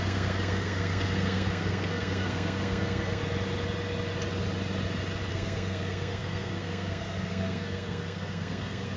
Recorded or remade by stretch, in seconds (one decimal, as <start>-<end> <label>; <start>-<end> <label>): 0.0-3.2 remade; 3.2-5.3 recorded; 5.3-9.0 remade